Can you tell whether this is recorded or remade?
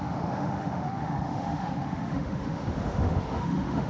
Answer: remade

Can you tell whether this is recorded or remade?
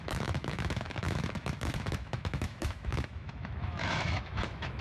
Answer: remade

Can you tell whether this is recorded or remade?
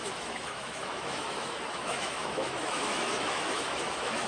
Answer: remade